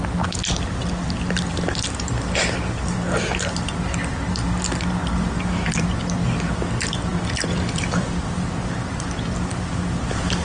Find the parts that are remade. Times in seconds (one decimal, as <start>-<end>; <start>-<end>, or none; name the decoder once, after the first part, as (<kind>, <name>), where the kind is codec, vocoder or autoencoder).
7.1-8.3 (vocoder, BigVGAN v2)